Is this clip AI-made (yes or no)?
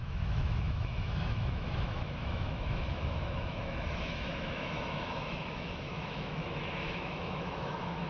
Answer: yes